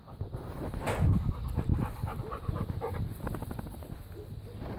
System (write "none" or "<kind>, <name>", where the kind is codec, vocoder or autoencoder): none